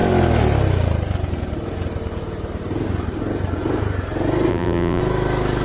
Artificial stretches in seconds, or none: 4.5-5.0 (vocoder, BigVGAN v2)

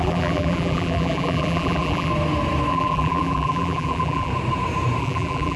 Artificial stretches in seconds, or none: 0.0-2.1 (vocoder, BigVGAN v2); 2.7-4.3; 5.0-5.6

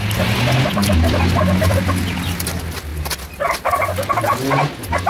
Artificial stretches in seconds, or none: 0.8-1.8 (vocoder, BigVGAN v2)

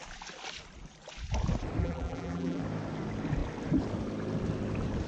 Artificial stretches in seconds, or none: 1.8-2.6 (vocoder, BigVGAN v2)

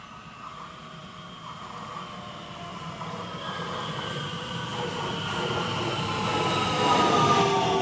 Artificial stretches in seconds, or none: 2.7-3.7 (vocoder, BigVGAN v2)

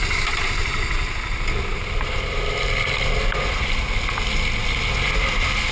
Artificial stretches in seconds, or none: 1.8-3.8 (vocoder, BigVGAN v2); 4.6-5.7

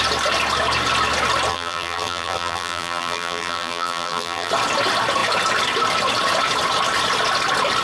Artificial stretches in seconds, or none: 1.5-4.5 (vocoder, BigVGAN v2)